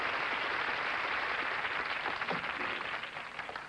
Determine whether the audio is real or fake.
real